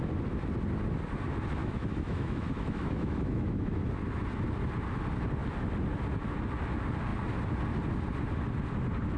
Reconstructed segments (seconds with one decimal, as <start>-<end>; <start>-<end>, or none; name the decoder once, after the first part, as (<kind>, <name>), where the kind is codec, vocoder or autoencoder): 1.6-3.9 (autoencoder, DAC-VAE)